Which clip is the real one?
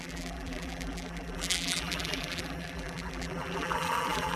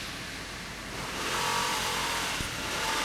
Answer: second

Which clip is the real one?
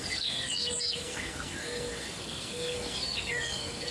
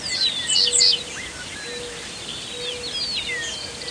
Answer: second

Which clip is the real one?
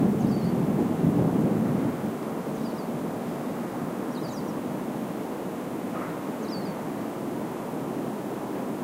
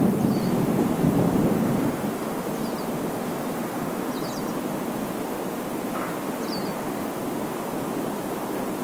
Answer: first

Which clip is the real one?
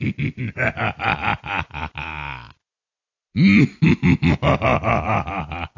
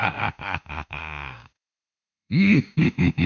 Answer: first